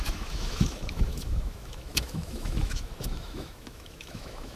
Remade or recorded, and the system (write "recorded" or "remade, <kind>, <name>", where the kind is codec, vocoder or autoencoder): remade, autoencoder, DAC-VAE